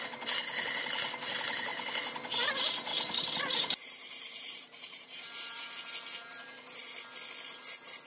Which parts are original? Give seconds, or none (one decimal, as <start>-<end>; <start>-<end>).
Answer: 0.0-2.9; 5.8-6.3; 6.8-8.1